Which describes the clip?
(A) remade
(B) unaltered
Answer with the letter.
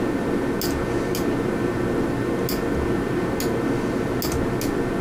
B